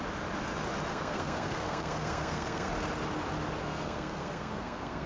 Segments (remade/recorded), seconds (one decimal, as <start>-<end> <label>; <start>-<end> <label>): 0.0-0.9 recorded; 0.9-2.7 remade; 2.7-3.6 recorded; 3.6-5.1 remade